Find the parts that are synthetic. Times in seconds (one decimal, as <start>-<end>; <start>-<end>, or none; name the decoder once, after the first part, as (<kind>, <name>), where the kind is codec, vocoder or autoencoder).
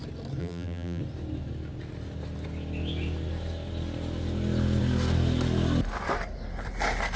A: 0.4-1.0 (vocoder, BigVGAN v2)